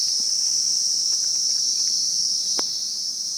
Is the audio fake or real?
fake